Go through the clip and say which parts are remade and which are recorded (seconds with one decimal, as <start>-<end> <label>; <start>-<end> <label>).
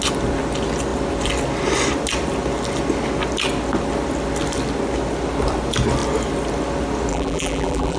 0.0-7.1 recorded; 7.1-8.0 remade